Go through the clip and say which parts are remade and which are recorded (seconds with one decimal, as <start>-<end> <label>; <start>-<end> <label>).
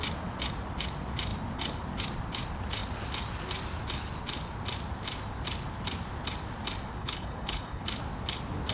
0.0-7.0 recorded; 7.0-7.8 remade; 7.8-8.7 recorded